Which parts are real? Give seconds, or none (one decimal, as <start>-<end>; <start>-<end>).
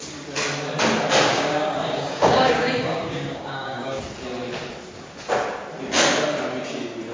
0.0-1.3; 4.0-7.1